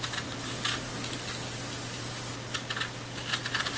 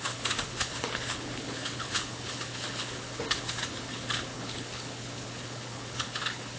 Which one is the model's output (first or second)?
second